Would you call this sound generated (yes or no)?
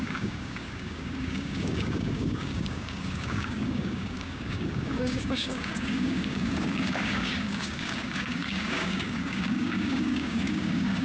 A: yes